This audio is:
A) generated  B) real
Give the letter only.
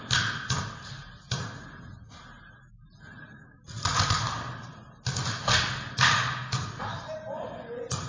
B